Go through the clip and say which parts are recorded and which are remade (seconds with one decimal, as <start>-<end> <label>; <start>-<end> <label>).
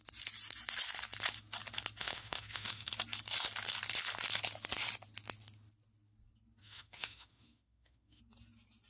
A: 0.0-2.0 recorded; 2.0-2.9 remade; 2.9-6.6 recorded; 6.6-8.2 remade; 8.2-8.9 recorded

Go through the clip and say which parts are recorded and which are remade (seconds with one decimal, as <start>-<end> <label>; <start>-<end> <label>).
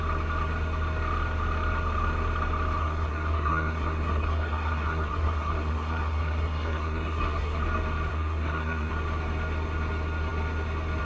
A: 0.0-2.8 recorded; 2.8-7.6 remade; 7.6-8.1 recorded; 8.1-8.9 remade; 8.9-11.0 recorded